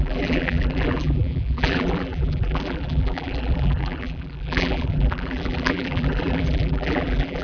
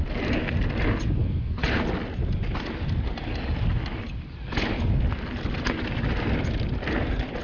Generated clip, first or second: first